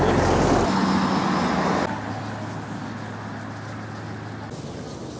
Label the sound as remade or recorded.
recorded